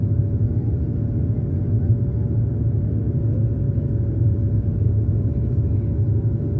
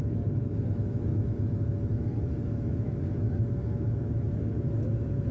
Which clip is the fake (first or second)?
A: second